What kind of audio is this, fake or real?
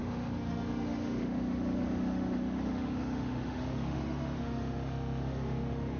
fake